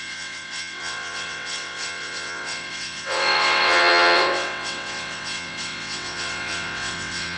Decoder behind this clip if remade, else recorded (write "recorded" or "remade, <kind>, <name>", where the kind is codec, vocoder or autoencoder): remade, vocoder, WaveNeXt